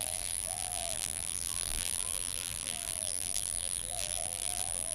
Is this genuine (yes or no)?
no